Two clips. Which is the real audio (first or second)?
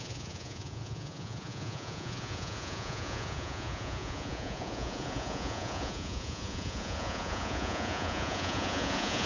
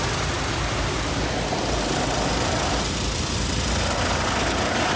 second